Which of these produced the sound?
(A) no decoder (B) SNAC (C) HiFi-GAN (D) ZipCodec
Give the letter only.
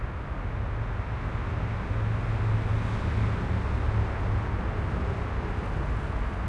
A